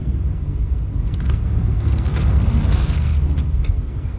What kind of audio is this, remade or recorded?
remade